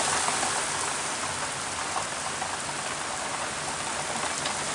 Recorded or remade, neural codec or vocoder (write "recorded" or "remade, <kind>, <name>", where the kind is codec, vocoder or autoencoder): recorded